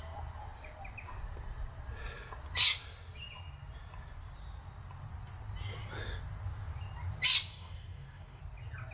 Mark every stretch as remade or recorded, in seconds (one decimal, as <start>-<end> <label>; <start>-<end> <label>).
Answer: 0.0-7.5 recorded; 7.5-8.4 remade; 8.4-8.9 recorded